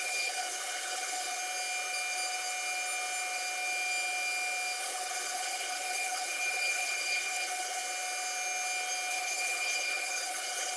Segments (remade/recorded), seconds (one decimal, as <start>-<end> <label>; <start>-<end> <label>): 0.0-1.4 remade; 1.4-4.8 recorded; 4.8-7.8 remade; 7.8-9.1 recorded; 9.1-10.8 remade